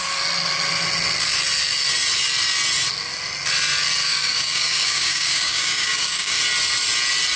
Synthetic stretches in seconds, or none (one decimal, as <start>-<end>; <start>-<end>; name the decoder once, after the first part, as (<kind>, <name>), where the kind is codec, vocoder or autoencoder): 4.0-6.4 (codec, DAC)